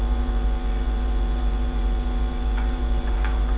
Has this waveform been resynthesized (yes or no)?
yes